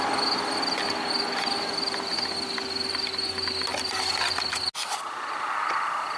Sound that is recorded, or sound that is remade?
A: recorded